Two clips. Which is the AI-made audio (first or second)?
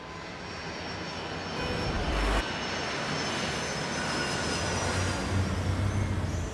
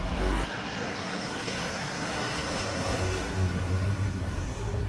second